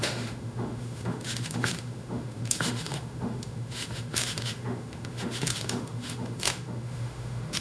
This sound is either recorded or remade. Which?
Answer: remade